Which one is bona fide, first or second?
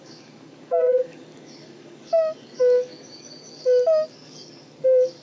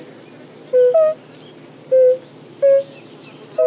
second